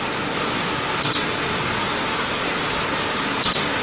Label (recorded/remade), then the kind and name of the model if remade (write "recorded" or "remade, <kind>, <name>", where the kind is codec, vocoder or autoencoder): recorded